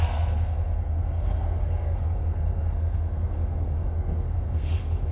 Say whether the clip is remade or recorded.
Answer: remade